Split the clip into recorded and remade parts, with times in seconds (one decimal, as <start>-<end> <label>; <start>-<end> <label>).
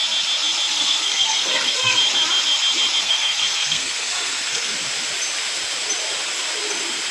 0.0-0.7 recorded; 0.7-2.0 remade; 2.0-3.0 recorded; 3.0-4.7 remade; 4.7-7.1 recorded